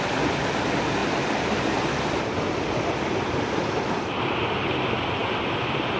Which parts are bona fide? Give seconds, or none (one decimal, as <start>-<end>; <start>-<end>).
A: 0.0-6.0